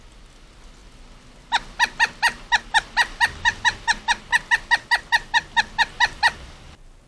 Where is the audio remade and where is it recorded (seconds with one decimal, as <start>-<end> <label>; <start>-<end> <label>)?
0.0-7.1 recorded